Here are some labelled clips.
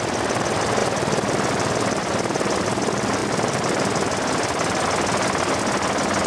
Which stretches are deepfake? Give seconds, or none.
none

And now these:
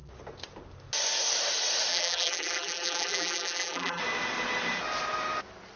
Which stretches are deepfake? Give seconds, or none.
1.9-4.0